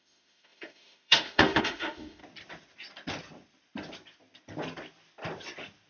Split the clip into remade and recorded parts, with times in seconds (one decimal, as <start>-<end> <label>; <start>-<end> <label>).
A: 0.0-2.2 remade; 2.2-5.9 recorded